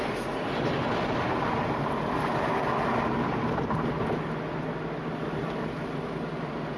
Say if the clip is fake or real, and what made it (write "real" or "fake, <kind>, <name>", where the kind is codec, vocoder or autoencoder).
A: real